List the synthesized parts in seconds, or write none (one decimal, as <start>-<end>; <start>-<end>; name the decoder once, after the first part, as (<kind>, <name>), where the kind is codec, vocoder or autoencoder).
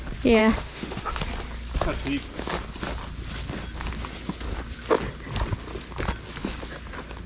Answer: 0.4-1.1 (autoencoder, DAC-VAE)